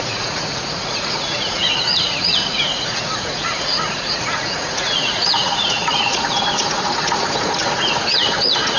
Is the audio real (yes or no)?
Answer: no